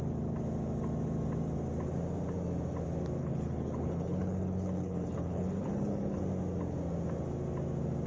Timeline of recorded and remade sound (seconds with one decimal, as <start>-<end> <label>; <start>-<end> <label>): 0.0-3.2 recorded; 3.2-6.2 remade; 6.2-8.1 recorded